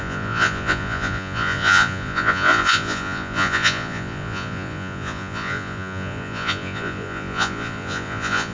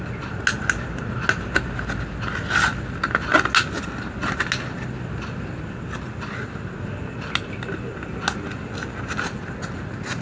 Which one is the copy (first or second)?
first